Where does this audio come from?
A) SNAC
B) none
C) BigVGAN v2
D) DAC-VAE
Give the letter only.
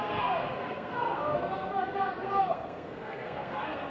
A